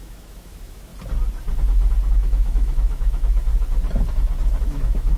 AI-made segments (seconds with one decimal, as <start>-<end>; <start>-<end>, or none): 0.0-0.9; 2.1-3.5; 4.6-5.2